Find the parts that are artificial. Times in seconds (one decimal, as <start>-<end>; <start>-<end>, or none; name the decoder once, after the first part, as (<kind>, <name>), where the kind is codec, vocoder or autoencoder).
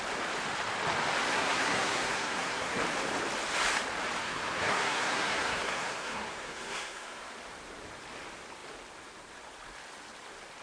1.3-2.8 (codec, SNAC); 4.2-7.3